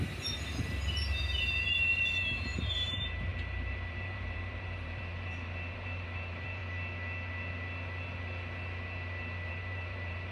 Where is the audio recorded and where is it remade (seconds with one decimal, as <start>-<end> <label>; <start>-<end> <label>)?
0.0-6.6 remade; 6.6-9.5 recorded; 9.5-10.3 remade